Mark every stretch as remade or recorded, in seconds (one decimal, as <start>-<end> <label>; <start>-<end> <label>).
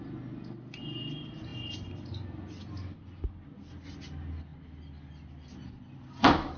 0.0-6.6 recorded